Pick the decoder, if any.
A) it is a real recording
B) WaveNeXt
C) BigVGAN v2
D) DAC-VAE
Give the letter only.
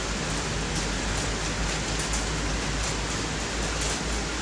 A